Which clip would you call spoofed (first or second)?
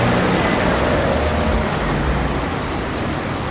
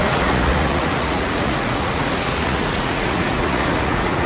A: second